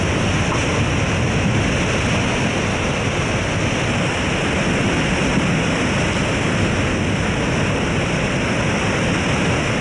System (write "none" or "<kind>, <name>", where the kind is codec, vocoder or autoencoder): none